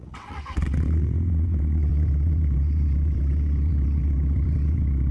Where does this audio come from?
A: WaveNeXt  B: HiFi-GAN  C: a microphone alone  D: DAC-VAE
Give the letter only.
A